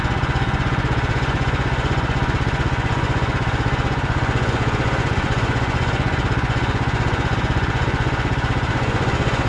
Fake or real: fake